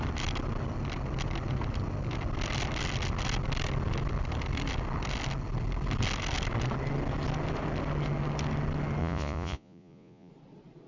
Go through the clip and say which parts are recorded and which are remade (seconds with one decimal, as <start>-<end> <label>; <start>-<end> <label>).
0.0-9.0 recorded; 9.0-10.3 remade; 10.3-10.9 recorded